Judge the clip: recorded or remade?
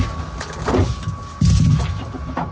recorded